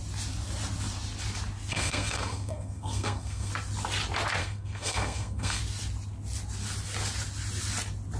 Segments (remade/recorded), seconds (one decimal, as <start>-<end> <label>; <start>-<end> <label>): 0.0-1.7 recorded; 1.7-3.5 remade; 3.5-4.4 recorded; 4.4-5.6 remade; 5.6-8.2 recorded